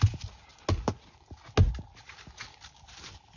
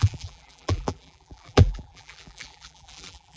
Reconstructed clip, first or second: second